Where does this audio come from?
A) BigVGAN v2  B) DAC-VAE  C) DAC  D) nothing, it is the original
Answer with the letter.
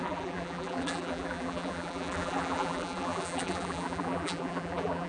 A